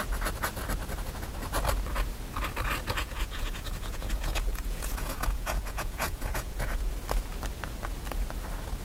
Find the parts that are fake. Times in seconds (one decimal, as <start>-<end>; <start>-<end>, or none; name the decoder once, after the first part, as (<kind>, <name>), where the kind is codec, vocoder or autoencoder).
3.0-6.9 (vocoder, Vocos)